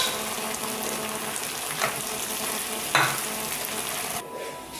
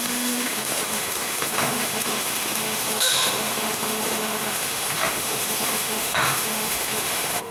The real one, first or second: first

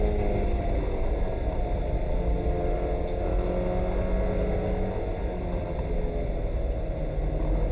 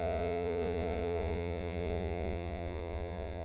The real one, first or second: first